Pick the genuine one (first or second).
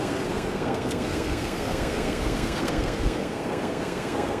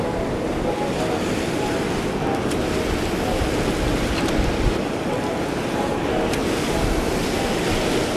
second